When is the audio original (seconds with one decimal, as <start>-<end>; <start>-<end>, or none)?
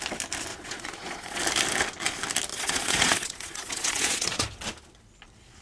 0.0-0.5; 1.4-2.5; 4.6-5.6